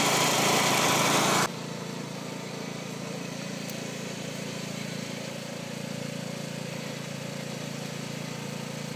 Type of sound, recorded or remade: remade